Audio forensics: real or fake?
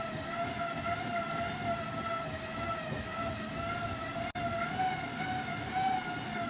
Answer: real